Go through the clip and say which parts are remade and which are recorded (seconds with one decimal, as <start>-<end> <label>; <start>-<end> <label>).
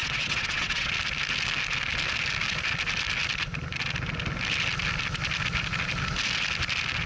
0.0-0.9 remade; 0.9-7.1 recorded